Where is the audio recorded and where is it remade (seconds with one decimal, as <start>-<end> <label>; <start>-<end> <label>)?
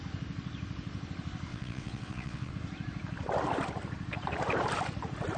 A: 0.0-1.5 recorded; 1.5-2.5 remade; 2.5-5.4 recorded